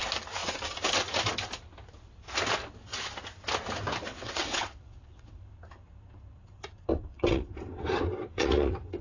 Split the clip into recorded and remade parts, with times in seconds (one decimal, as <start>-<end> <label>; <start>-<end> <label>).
0.0-4.1 recorded; 4.1-5.4 remade; 5.4-6.9 recorded; 6.9-9.0 remade